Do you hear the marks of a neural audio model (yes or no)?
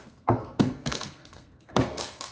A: yes